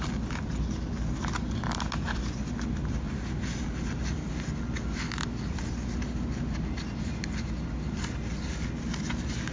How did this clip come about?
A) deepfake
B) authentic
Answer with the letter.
B